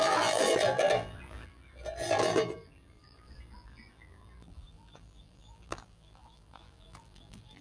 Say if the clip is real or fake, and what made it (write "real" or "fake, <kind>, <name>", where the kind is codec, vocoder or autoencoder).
fake, vocoder, BigVGAN v2